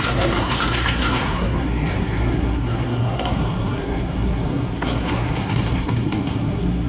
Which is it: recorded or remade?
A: remade